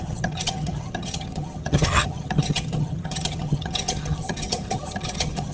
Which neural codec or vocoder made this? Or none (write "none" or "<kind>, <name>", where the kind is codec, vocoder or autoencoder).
vocoder, HiFi-GAN